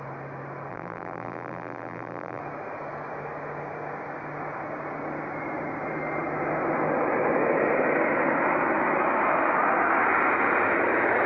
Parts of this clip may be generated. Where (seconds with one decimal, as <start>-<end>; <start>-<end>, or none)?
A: 0.7-2.4